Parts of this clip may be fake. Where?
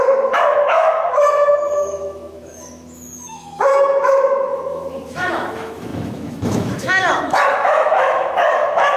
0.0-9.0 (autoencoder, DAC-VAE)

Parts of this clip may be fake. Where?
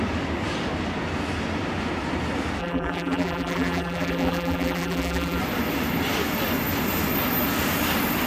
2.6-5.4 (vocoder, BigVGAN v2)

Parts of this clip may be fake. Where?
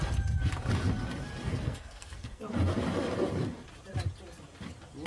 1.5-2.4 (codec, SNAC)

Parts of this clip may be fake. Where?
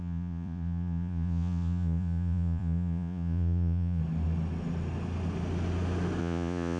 0.0-4.0 (vocoder, Vocos); 6.2-6.8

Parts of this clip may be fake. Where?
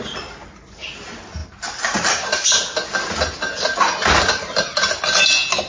none